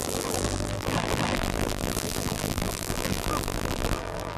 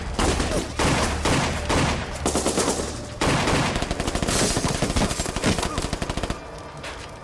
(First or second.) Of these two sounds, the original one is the second